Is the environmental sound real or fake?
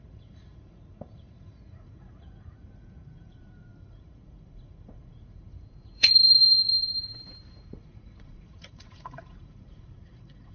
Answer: fake